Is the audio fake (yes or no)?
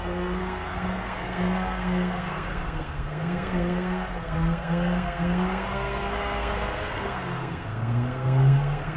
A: yes